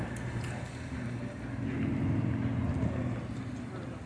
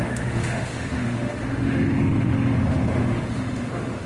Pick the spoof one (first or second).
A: second